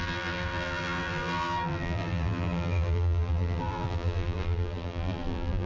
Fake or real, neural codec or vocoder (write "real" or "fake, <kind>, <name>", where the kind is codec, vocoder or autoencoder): fake, vocoder, BigVGAN v2